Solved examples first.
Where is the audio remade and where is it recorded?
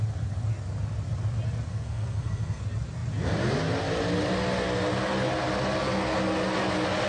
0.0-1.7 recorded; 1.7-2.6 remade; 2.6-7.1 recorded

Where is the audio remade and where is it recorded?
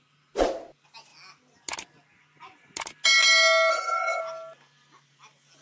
0.0-3.7 recorded; 3.7-4.2 remade; 4.2-5.6 recorded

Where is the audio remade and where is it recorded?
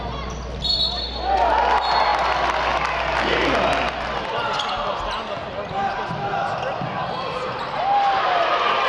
0.0-8.9 recorded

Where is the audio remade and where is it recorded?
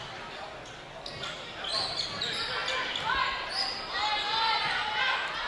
0.0-5.5 recorded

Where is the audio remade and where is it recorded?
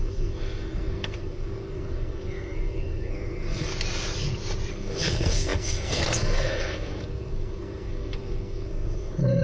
0.0-3.7 remade; 3.7-4.7 recorded; 4.7-9.4 remade